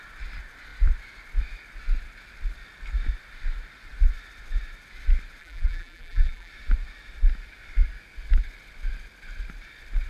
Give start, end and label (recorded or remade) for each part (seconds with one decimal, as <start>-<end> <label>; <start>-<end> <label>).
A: 0.0-5.4 recorded; 5.4-6.5 remade; 6.5-10.1 recorded